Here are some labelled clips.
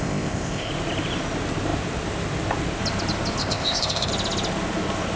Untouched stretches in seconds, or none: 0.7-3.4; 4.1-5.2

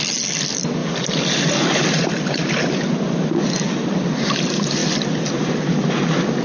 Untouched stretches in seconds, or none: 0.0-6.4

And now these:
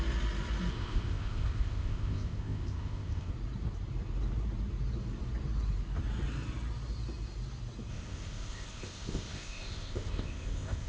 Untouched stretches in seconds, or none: 0.0-0.7; 3.3-7.9

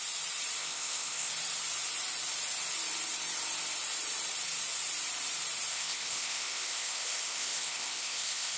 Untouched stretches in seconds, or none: 0.0-0.6; 1.3-5.7